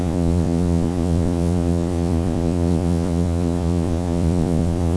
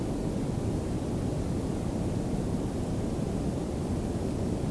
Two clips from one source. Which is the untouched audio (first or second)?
second